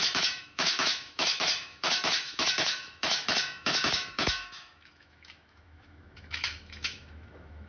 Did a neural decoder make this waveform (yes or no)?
yes